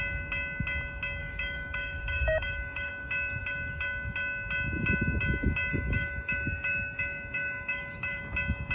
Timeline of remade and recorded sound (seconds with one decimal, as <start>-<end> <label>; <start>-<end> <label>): 0.0-1.2 recorded; 1.2-2.9 remade; 2.9-5.7 recorded; 5.7-8.2 remade; 8.2-8.7 recorded